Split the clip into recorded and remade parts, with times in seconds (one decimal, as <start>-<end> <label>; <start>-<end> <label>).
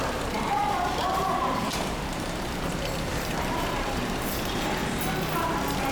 0.0-4.8 remade; 4.8-5.9 recorded